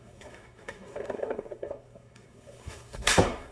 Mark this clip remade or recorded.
remade